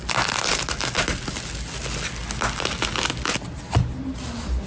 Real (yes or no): yes